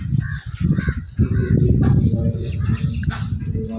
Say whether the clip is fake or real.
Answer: real